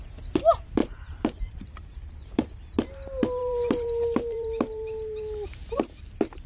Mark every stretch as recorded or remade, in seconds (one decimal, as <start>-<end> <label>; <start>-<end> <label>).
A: 0.0-0.8 recorded; 0.8-2.6 remade; 2.6-3.4 recorded; 3.4-6.0 remade; 6.0-6.5 recorded